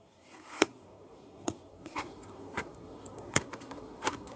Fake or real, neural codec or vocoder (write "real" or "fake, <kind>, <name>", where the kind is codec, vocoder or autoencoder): fake, codec, SNAC